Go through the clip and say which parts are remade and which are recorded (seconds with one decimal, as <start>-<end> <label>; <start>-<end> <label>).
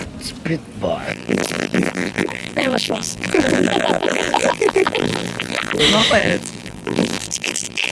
0.0-1.1 recorded; 1.1-5.8 remade; 5.8-6.2 recorded; 6.2-7.9 remade